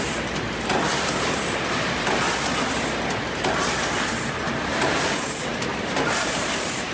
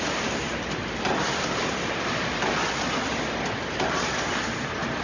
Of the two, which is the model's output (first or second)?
second